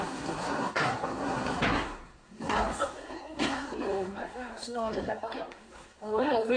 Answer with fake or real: fake